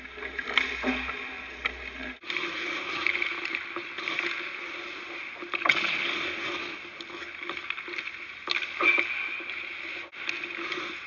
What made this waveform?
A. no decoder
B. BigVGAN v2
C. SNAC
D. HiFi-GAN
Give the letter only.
A